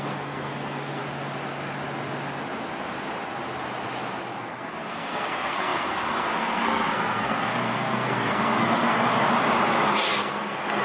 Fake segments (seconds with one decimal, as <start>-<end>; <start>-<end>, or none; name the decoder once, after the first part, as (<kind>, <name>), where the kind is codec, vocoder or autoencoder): 0.0-1.0 (codec, SNAC); 4.4-9.1; 10.1-10.8